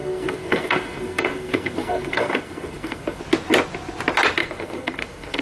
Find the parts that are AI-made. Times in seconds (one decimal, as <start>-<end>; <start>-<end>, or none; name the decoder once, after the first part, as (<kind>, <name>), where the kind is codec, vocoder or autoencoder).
0.0-3.2 (codec, SNAC); 4.4-5.4